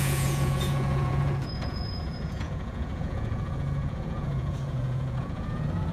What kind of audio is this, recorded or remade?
remade